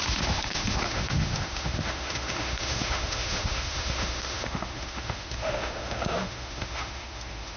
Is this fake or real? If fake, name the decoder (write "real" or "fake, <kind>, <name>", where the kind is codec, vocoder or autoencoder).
fake, autoencoder, DAC-VAE